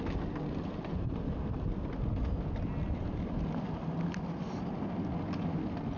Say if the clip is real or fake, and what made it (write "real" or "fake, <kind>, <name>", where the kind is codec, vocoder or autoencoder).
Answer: real